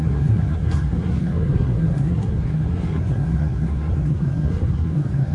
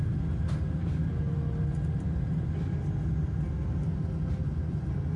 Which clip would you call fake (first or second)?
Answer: first